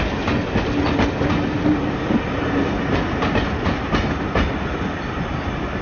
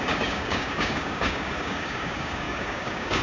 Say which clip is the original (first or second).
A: first